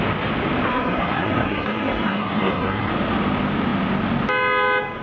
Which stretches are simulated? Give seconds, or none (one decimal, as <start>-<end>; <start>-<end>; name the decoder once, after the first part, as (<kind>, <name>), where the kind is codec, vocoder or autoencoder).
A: 0.7-2.9 (codec, SNAC)